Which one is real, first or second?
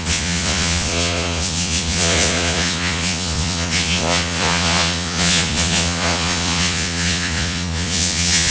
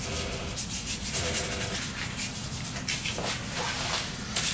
second